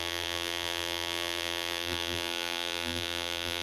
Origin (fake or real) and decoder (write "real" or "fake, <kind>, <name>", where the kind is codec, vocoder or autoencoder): fake, vocoder, BigVGAN v2